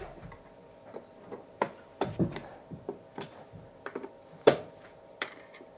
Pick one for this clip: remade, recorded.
remade